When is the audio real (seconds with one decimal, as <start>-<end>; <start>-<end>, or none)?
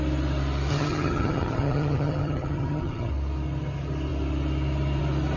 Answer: 0.0-0.7; 3.1-5.4